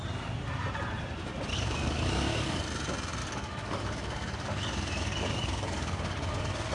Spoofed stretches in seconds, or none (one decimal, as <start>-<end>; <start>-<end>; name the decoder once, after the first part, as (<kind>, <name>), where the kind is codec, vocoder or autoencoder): 1.5-2.6 (codec, DAC); 3.2-6.7